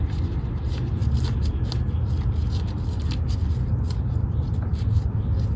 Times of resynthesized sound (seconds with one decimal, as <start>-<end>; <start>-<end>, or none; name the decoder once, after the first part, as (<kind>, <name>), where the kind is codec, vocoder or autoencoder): none